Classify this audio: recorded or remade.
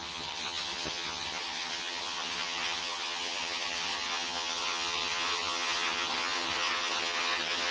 remade